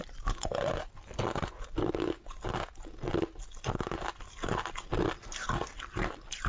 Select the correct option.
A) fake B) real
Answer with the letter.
B